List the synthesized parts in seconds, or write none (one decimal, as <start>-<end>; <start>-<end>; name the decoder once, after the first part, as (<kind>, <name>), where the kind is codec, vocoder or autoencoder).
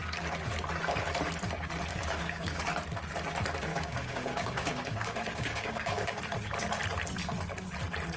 1.9-2.6 (codec, DAC); 3.7-6.2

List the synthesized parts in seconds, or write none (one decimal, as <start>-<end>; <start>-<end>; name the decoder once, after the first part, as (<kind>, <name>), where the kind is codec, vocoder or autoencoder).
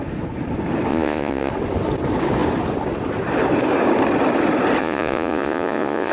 0.9-1.5 (vocoder, Vocos); 4.8-6.1